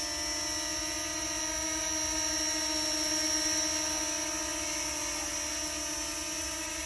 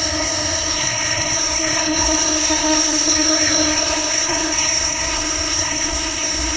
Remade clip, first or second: second